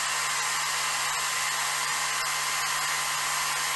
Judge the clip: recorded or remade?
recorded